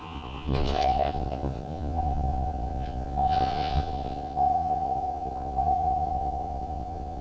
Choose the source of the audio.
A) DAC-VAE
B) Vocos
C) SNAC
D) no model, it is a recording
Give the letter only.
B